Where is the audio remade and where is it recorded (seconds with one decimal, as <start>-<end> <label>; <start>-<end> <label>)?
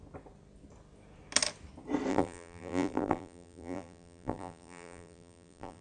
0.0-2.1 recorded; 2.1-5.8 remade